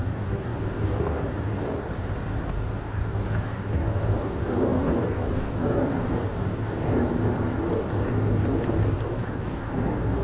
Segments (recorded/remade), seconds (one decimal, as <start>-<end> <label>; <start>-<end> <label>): 0.0-1.9 remade; 1.9-2.5 recorded; 2.5-7.1 remade; 7.1-7.7 recorded; 7.7-10.2 remade